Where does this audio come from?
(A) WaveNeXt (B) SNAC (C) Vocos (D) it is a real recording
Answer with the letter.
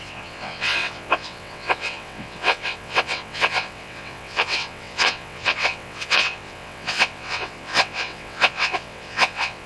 A